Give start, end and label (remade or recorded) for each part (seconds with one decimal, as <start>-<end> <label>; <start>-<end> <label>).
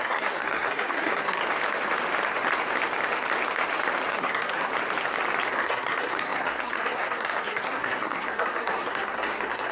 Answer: 0.0-1.4 remade; 1.4-4.1 recorded; 4.1-4.7 remade; 4.7-5.5 recorded; 5.5-9.7 remade